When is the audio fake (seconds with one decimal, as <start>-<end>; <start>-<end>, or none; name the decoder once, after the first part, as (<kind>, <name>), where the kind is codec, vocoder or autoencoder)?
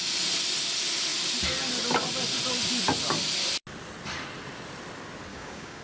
5.3-5.8 (codec, DAC)